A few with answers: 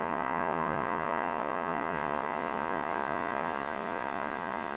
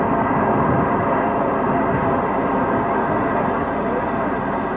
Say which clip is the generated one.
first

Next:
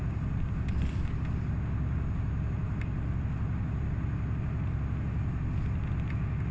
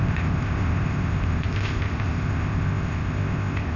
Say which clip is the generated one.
second